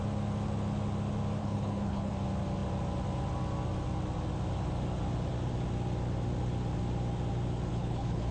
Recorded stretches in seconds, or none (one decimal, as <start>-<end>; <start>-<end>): 0.0-1.4; 2.1-7.7